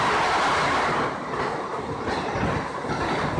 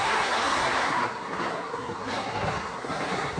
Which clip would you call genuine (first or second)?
first